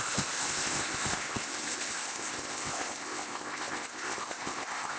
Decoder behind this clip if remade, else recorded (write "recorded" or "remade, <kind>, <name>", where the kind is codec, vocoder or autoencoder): remade, codec, ZipCodec